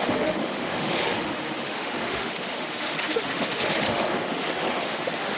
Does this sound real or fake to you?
fake